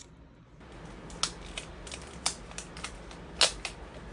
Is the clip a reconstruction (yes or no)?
no